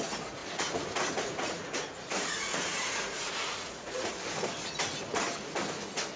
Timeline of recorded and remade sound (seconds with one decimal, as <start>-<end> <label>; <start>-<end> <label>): 0.0-0.4 recorded; 0.4-4.1 remade; 4.1-6.2 recorded